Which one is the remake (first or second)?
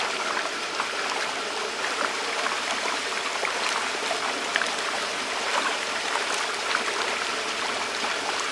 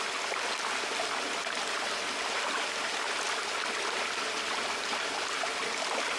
first